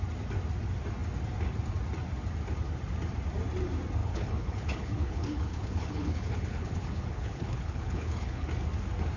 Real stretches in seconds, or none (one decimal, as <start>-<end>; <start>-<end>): 0.0-4.0; 8.5-9.2